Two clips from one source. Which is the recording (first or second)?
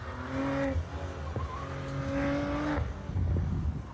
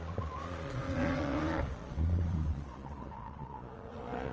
first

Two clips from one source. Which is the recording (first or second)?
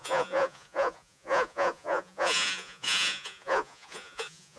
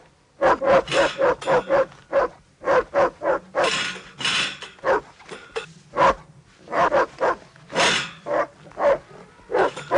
second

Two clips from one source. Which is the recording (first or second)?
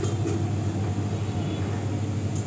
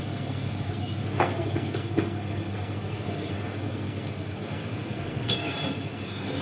first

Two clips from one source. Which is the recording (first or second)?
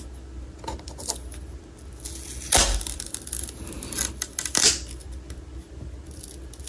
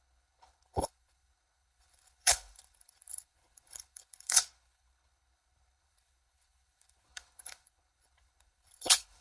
first